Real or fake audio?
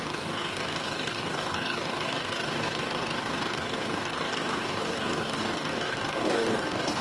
fake